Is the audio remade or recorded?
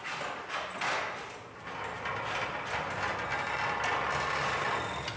recorded